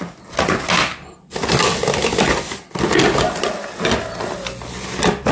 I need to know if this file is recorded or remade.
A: recorded